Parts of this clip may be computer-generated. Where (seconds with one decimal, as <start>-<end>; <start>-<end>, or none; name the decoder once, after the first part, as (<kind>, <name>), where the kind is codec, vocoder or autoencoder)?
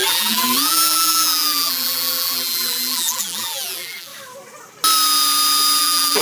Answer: 0.0-4.1 (vocoder, BigVGAN v2); 5.8-6.2